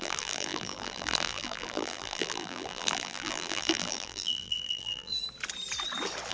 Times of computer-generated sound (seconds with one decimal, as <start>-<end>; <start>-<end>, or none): 0.0-5.1